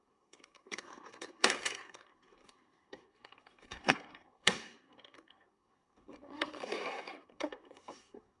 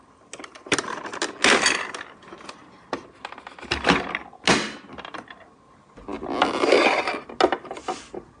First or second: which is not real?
first